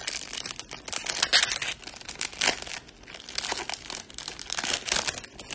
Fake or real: real